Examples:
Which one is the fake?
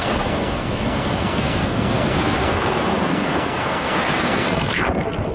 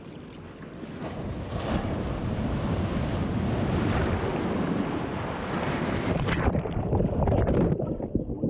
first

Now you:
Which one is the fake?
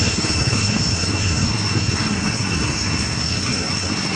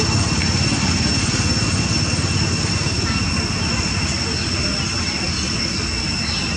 first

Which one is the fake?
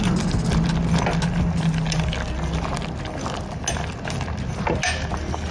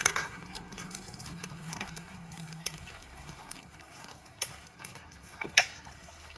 second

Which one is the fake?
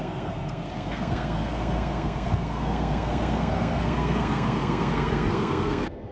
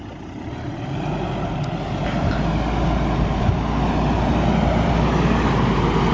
first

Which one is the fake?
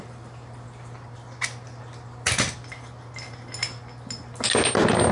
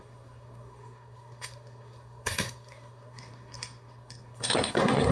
second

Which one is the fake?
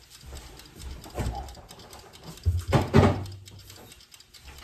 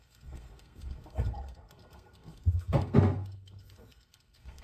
second